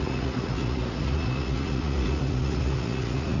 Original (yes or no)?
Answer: no